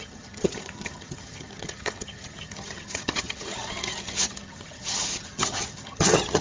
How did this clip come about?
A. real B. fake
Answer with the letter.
B